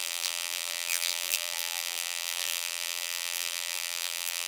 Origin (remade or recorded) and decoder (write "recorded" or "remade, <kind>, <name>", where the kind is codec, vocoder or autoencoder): remade, vocoder, BigVGAN v2